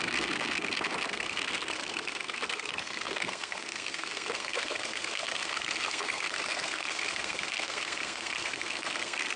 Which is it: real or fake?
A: fake